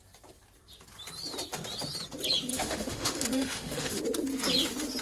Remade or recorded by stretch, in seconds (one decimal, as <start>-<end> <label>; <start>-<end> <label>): 0.0-2.5 recorded; 2.5-4.0 remade; 4.0-5.0 recorded